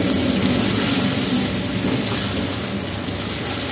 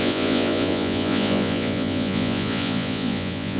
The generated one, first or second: second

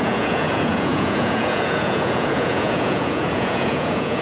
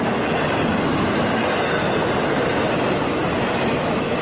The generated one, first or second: first